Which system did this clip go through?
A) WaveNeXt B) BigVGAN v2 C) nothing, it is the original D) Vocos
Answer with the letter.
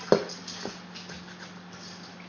C